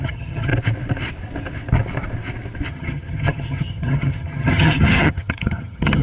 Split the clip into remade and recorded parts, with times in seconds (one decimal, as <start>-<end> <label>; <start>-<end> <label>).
0.0-0.5 remade; 0.5-2.7 recorded; 2.7-6.0 remade